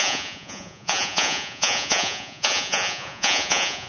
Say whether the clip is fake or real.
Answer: fake